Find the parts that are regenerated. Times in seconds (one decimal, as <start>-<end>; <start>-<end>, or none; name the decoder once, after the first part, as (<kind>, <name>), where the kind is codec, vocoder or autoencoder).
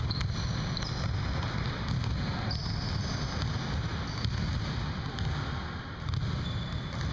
none